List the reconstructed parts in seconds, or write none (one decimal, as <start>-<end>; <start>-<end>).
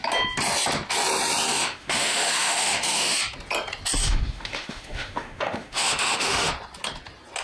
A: 1.5-3.2; 4.0-6.5